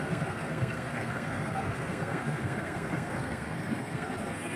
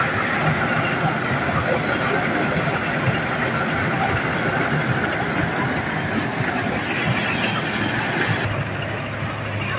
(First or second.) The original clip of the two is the second